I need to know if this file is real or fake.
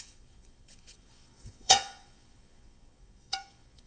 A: fake